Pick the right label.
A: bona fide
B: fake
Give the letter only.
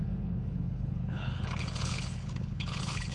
B